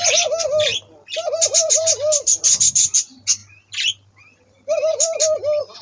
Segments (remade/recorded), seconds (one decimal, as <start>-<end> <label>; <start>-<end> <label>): 0.0-0.7 recorded; 0.7-2.7 remade; 2.7-3.4 recorded; 3.4-5.2 remade; 5.2-5.8 recorded